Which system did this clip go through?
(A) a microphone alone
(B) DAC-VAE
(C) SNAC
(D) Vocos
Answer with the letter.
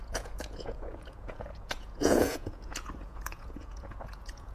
D